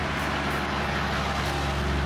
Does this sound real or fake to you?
real